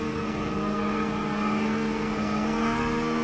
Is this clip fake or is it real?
fake